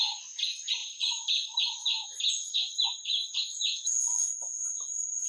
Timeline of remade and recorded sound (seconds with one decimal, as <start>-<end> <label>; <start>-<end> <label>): 0.0-3.4 recorded; 3.4-4.6 remade; 4.6-5.3 recorded